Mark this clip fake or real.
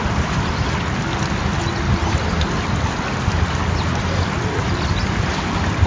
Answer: real